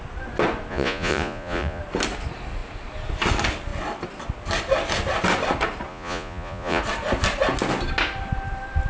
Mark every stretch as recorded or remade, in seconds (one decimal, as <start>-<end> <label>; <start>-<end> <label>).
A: 0.0-0.7 recorded; 0.7-1.8 remade; 1.8-5.9 recorded; 5.9-6.8 remade; 6.8-8.9 recorded